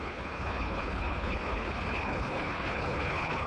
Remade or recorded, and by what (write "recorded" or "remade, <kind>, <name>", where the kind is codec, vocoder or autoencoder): remade, codec, HILCodec